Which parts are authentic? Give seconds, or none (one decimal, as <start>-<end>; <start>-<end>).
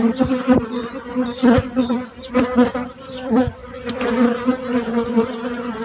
3.6-4.1